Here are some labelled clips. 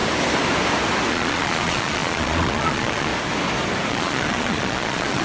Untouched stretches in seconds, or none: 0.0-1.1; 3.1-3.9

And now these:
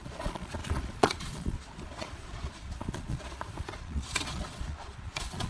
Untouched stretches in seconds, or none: none

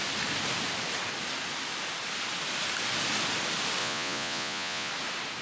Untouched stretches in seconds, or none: 0.0-3.8; 4.9-5.4

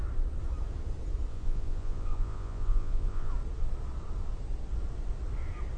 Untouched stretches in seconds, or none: 0.0-1.3; 3.3-5.8

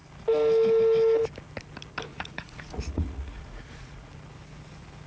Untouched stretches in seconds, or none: 0.0-2.1; 4.1-5.1

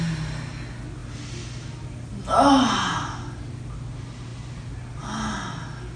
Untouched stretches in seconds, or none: 0.0-6.0